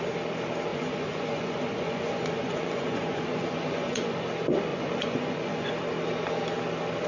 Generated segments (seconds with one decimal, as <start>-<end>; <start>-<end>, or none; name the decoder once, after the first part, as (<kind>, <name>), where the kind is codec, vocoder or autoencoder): 0.7-4.2 (vocoder, Vocos); 4.7-5.7